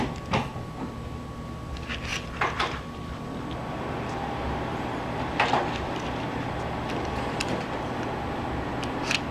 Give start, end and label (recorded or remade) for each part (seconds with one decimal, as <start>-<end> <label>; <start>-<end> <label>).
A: 0.0-2.1 recorded; 2.1-6.5 remade; 6.5-9.3 recorded